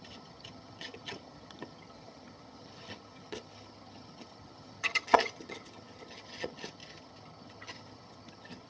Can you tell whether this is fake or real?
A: fake